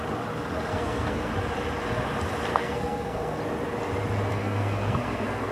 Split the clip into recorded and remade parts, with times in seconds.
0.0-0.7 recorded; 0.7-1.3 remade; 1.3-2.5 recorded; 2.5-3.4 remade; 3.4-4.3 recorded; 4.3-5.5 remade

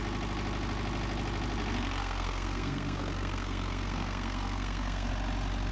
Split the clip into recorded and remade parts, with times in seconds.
0.0-2.0 recorded; 2.0-5.1 remade; 5.1-5.7 recorded

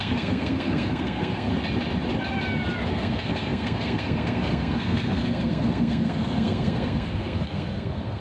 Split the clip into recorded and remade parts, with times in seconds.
0.0-1.5 remade; 1.5-2.9 recorded; 2.9-8.2 remade

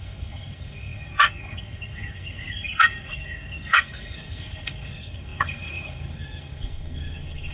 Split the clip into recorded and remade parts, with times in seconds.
0.0-7.5 remade